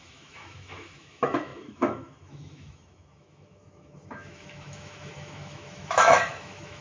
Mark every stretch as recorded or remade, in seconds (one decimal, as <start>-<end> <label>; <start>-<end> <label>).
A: 0.0-6.8 remade